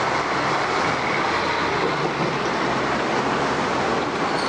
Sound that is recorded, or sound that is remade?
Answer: recorded